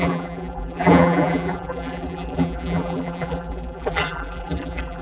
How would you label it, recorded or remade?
remade